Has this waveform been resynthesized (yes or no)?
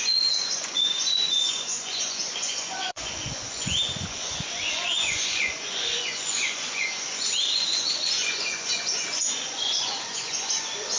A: yes